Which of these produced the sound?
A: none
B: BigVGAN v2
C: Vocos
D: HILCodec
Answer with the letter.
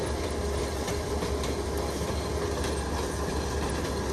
A